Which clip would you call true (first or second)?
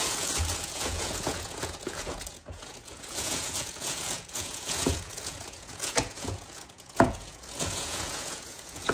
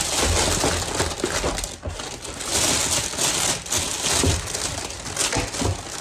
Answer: second